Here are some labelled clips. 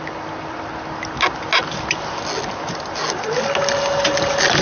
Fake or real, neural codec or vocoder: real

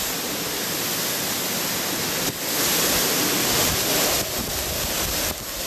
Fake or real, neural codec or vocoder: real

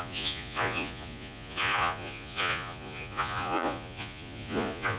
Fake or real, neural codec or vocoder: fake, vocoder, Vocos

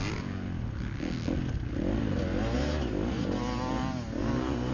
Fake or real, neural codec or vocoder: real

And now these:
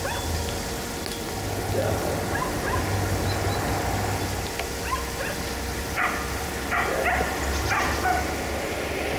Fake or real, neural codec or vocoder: real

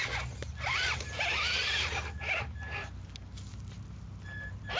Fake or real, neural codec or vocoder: real